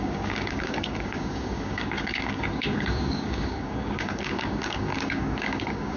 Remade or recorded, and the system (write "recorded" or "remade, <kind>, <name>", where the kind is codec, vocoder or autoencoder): remade, codec, DAC